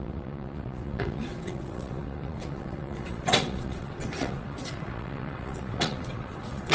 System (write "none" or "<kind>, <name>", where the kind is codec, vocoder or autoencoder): vocoder, WaveNeXt